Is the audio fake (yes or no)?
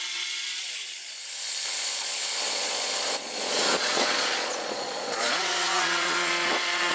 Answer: yes